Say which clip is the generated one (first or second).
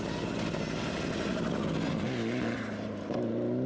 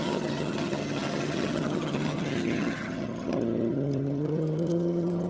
second